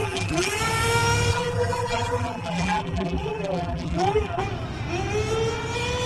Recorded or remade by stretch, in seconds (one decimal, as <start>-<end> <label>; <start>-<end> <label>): 0.0-0.6 remade; 0.6-1.3 recorded; 1.3-4.4 remade; 4.4-6.1 recorded